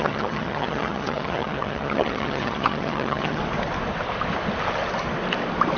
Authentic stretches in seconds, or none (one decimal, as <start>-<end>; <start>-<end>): 3.4-5.8